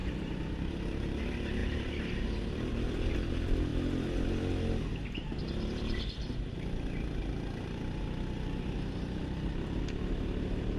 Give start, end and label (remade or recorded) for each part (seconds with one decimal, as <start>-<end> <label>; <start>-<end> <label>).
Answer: 0.0-10.8 recorded